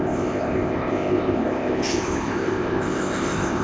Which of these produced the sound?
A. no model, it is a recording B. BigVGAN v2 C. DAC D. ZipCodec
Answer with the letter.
D